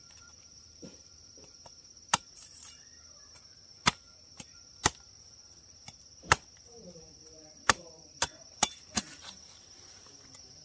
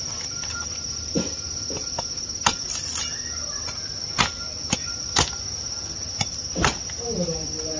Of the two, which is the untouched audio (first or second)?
second